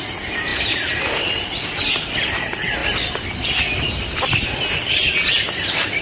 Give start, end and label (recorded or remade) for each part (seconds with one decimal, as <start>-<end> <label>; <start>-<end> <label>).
0.0-6.0 recorded